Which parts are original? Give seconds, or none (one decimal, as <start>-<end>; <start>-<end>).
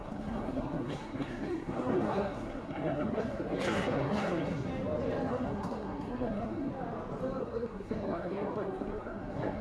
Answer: 4.7-5.3; 6.7-7.4